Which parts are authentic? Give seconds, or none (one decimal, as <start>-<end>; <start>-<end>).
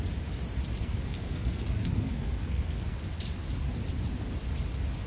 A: 0.0-0.8; 3.0-5.1